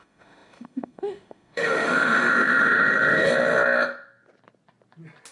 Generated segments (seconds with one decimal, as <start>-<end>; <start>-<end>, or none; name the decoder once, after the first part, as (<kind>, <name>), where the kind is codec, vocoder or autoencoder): 0.0-3.3 (autoencoder, DAC-VAE)

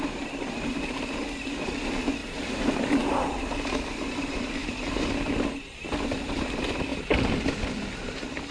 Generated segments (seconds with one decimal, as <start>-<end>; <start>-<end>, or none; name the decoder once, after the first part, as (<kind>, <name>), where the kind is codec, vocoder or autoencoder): 2.2-3.2 (vocoder, BigVGAN v2); 6.9-7.5